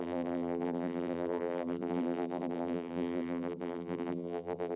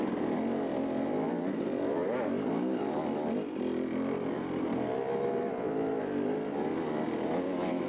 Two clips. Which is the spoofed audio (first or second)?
first